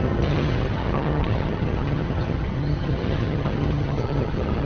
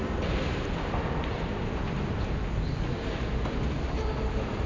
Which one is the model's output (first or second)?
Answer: first